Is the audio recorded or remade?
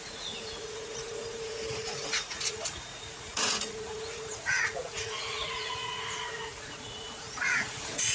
remade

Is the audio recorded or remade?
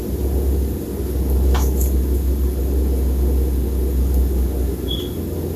recorded